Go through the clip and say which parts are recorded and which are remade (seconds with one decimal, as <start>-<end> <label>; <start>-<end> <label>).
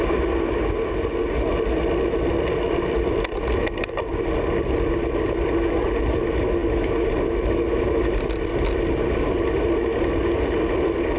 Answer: 0.0-11.2 recorded